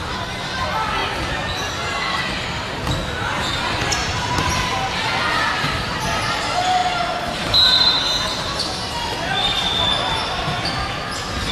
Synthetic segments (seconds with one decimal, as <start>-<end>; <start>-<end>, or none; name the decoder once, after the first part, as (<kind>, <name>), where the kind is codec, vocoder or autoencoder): 4.0-4.6 (vocoder, BigVGAN v2)